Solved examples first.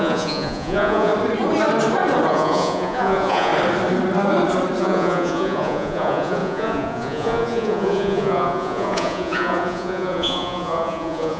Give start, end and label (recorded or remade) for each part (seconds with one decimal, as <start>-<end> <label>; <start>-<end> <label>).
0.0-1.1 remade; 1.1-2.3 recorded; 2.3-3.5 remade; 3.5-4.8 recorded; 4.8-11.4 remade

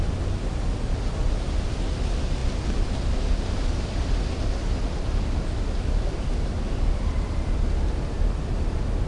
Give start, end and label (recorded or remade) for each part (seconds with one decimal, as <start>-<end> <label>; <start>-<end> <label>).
0.0-9.1 recorded

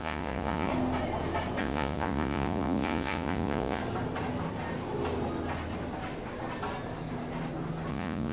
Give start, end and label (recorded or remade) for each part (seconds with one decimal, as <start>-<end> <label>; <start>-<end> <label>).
0.0-0.7 remade; 0.7-1.6 recorded; 1.6-3.8 remade; 3.8-7.9 recorded; 7.9-8.3 remade

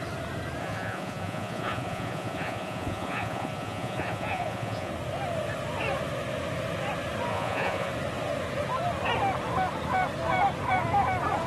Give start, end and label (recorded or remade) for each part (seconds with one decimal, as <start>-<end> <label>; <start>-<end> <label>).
0.0-0.6 recorded; 0.6-4.9 remade; 4.9-7.3 recorded; 7.3-7.9 remade; 7.9-11.5 recorded

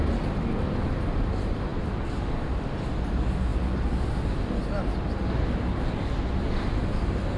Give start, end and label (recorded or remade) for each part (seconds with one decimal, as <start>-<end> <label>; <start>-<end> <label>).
0.0-7.4 recorded